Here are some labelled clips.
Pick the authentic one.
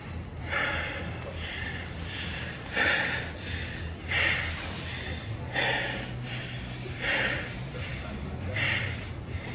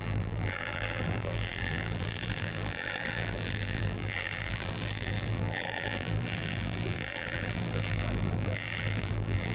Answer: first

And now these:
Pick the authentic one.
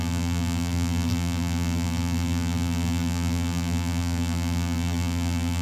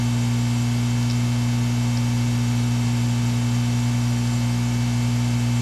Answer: second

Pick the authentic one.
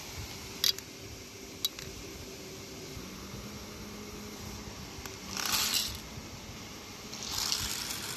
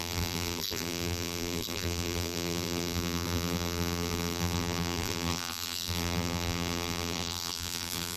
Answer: first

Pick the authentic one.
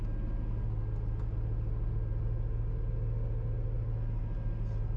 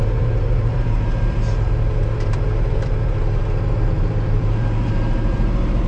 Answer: first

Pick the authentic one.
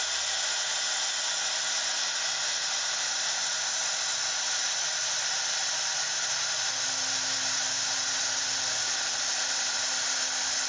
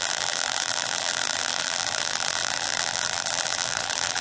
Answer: first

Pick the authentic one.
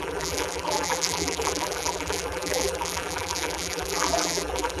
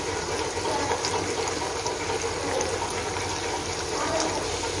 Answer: second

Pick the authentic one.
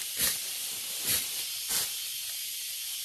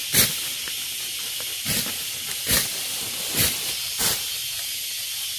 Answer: second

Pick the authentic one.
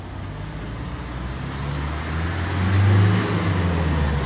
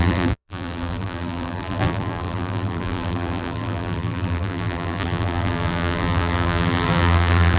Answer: first